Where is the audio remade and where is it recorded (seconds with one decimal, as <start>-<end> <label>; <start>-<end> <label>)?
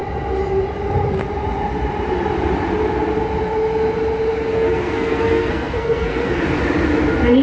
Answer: 0.0-4.5 recorded; 4.5-6.4 remade; 6.4-7.4 recorded